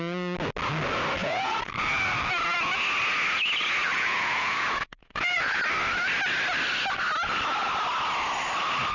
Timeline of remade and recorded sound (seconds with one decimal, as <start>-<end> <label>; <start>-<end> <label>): 0.0-1.2 recorded; 1.2-1.7 remade; 1.7-3.8 recorded; 3.8-5.6 remade; 5.6-8.9 recorded